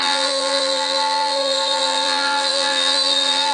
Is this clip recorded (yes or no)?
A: no